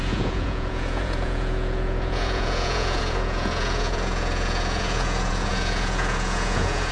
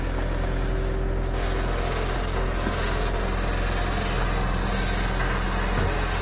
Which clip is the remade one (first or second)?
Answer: first